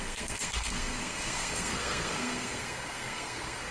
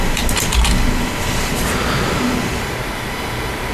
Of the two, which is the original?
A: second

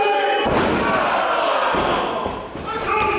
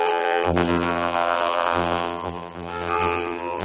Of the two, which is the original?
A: first